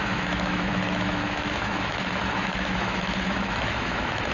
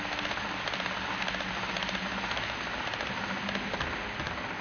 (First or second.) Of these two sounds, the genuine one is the second